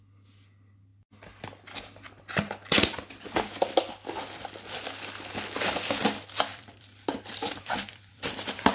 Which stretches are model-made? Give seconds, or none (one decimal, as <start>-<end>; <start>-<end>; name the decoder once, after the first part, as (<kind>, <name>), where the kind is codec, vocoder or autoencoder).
6.5-8.7 (vocoder, BigVGAN v2)